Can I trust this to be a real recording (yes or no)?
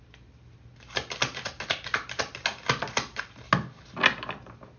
yes